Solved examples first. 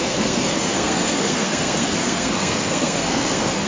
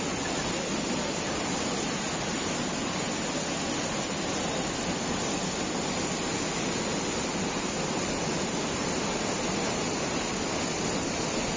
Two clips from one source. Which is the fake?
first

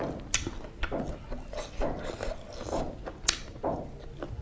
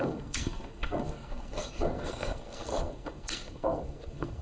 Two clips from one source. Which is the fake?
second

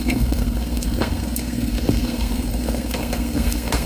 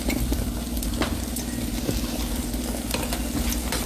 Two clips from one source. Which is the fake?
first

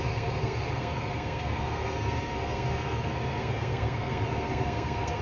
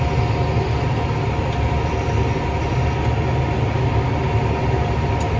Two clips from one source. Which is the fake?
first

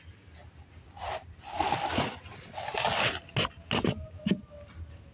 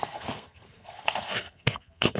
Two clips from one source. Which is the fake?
second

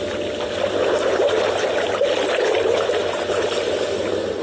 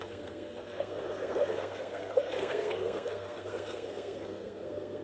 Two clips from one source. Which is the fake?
second